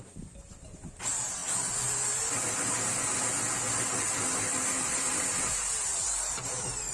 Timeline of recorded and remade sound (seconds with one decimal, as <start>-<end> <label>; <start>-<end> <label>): 0.0-6.9 recorded